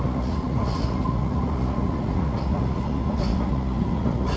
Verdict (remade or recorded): remade